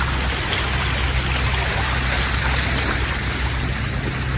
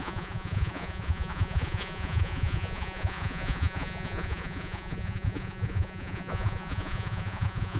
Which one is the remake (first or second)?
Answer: second